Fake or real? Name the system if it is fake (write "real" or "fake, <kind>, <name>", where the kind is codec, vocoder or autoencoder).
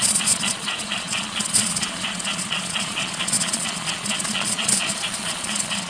fake, vocoder, Vocos